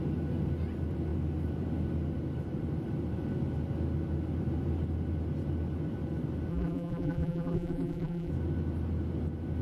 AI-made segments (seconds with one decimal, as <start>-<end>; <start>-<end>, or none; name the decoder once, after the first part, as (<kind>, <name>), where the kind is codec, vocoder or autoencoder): 6.5-8.3 (vocoder, BigVGAN v2)